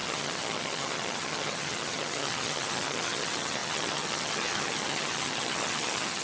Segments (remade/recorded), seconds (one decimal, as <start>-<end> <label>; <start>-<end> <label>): 0.0-6.2 remade